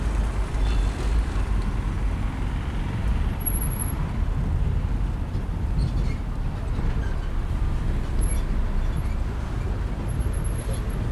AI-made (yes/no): no